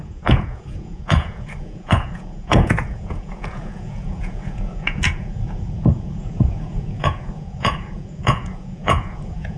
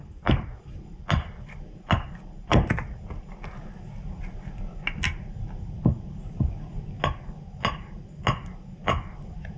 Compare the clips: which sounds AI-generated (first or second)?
first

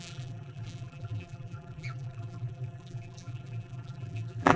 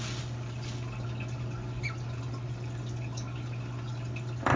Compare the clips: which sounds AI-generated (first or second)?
first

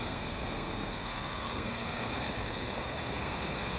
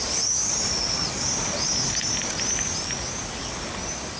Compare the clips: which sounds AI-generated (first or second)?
first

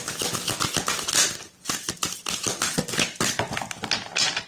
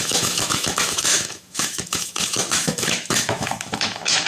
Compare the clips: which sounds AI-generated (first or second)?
second